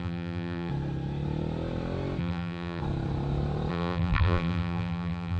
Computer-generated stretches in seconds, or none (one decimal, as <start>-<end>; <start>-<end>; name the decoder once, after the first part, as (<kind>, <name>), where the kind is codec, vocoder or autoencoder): 0.0-0.7 (vocoder, BigVGAN v2); 2.2-2.8; 3.7-5.4